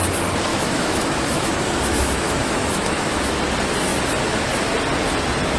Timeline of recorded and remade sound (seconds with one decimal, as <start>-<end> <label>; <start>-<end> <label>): 0.0-0.5 recorded; 0.5-3.4 remade; 3.4-5.6 recorded